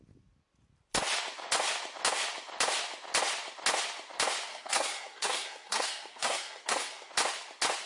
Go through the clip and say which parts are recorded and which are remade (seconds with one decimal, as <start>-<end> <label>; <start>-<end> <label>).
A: 0.0-4.5 recorded; 4.5-7.1 remade; 7.1-7.9 recorded